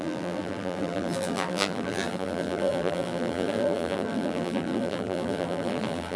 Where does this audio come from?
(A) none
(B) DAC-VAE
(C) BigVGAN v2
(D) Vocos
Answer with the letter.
C